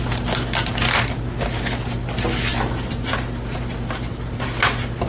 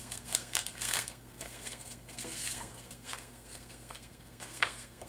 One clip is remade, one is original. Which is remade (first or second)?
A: second